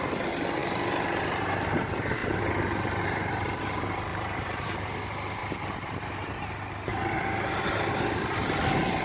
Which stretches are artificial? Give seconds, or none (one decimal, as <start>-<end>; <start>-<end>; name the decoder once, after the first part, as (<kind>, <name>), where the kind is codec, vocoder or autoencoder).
4.1-4.9 (vocoder, BigVGAN v2)